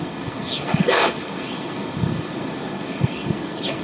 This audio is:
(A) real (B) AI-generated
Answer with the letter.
B